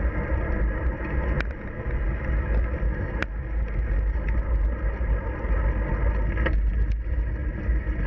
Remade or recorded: recorded